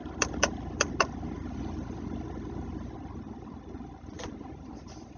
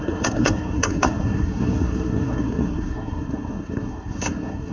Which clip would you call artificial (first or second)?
second